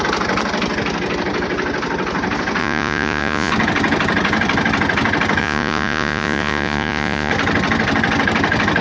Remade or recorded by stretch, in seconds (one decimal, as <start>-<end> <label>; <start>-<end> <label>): 0.0-2.6 recorded; 2.6-3.5 remade; 3.5-5.4 recorded; 5.4-7.3 remade; 7.3-8.8 recorded